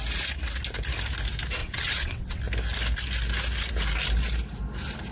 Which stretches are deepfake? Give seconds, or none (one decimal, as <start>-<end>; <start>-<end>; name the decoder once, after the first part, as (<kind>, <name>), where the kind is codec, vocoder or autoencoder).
1.6-2.4 (vocoder, WaveNeXt)

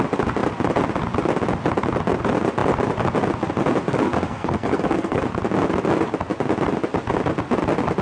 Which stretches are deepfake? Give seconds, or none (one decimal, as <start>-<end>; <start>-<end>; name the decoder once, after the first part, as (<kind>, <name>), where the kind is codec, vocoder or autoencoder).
3.9-5.2 (codec, SNAC)